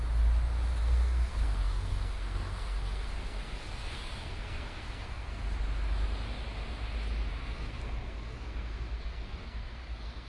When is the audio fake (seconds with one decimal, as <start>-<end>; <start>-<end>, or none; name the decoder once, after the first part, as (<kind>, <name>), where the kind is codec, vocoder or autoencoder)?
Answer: 0.8-5.4 (codec, SNAC); 7.3-10.3